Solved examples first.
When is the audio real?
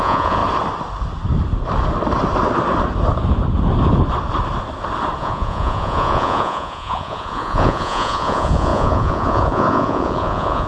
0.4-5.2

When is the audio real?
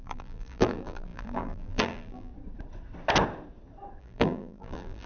2.3-4.0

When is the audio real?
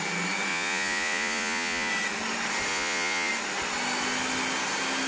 0.0-0.5; 1.9-2.7; 3.3-5.1